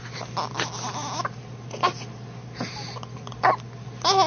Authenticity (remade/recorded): recorded